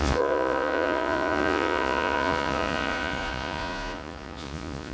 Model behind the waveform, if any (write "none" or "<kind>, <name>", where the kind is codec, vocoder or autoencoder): vocoder, Vocos